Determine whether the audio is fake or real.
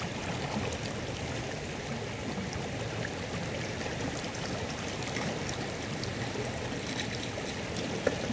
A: real